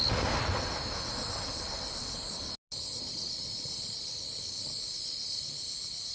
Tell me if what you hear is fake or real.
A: real